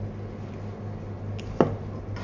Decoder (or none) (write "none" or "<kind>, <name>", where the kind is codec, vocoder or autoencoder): none